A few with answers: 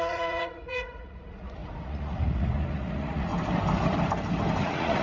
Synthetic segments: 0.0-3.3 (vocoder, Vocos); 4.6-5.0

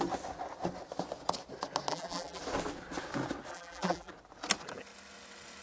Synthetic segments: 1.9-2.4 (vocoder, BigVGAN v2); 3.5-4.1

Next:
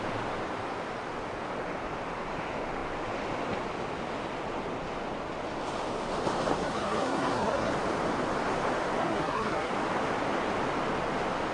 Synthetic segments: 6.6-7.7 (codec, SNAC); 9.0-9.7

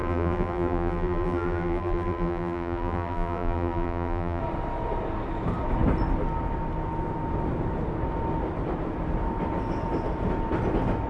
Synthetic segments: 0.0-4.4 (vocoder, BigVGAN v2)